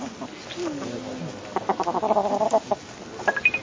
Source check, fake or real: real